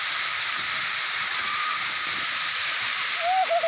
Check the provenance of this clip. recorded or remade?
recorded